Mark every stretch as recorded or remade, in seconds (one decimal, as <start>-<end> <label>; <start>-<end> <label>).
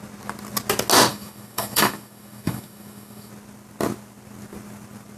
0.0-1.1 recorded; 1.1-3.3 remade; 3.3-5.2 recorded